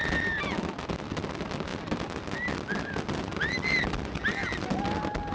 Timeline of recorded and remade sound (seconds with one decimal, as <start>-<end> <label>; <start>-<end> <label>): 0.0-5.3 recorded